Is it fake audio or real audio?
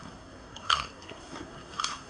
fake